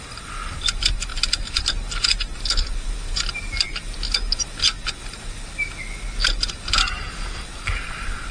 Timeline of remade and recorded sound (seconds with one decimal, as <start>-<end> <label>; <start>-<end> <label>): 0.0-1.1 recorded; 1.1-1.6 remade; 1.6-8.3 recorded